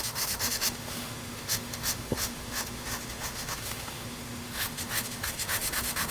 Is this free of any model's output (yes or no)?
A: no